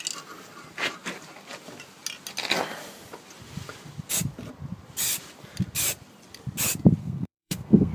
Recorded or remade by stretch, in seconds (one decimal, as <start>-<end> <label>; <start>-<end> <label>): 0.0-7.0 recorded; 7.0-7.9 remade